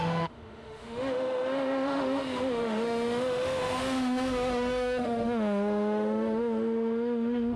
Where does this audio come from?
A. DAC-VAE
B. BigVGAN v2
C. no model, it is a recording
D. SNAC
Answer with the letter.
A